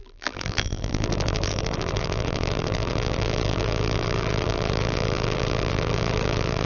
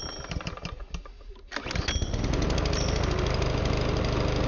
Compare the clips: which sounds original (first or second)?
second